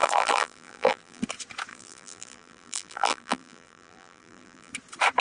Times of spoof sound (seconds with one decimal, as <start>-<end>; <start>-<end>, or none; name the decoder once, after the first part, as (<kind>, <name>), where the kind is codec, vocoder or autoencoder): 0.0-1.2 (vocoder, BigVGAN v2); 1.7-4.7